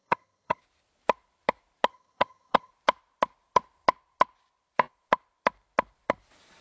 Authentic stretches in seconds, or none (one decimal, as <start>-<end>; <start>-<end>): 0.6-1.9; 2.7-6.6